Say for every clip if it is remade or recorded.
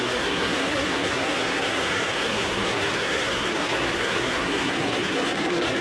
remade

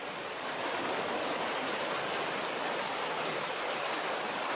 remade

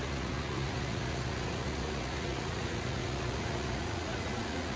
remade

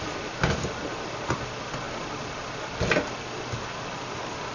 recorded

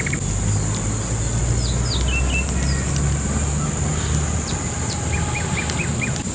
recorded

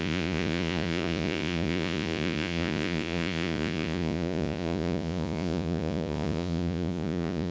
remade